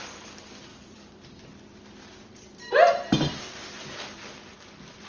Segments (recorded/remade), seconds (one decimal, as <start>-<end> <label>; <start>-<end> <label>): 0.0-5.1 recorded